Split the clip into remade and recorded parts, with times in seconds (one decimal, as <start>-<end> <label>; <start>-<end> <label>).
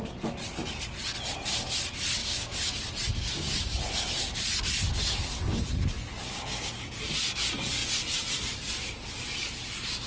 0.0-2.2 recorded; 2.2-2.7 remade; 2.7-3.1 recorded; 3.1-3.8 remade; 3.8-6.1 recorded; 6.1-6.7 remade; 6.7-10.1 recorded